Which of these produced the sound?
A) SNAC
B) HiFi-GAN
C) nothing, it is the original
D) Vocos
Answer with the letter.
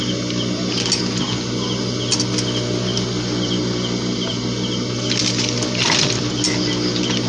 C